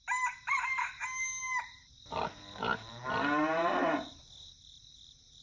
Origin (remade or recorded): remade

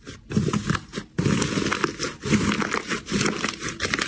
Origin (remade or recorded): recorded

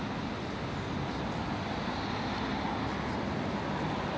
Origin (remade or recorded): recorded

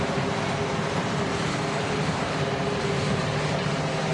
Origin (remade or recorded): remade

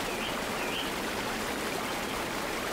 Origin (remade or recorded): recorded